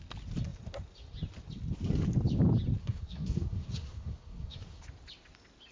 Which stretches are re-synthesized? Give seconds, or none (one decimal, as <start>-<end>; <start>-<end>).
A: 2.8-4.8